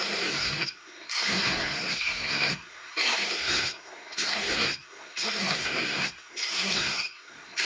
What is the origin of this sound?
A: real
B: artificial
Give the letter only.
B